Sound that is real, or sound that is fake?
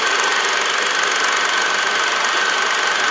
real